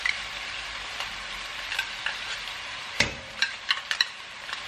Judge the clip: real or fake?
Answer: fake